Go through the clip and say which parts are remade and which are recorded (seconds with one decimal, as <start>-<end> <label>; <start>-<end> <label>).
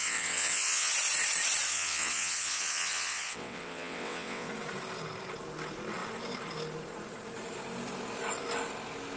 0.0-0.9 remade; 0.9-1.7 recorded; 1.7-4.5 remade; 4.5-9.2 recorded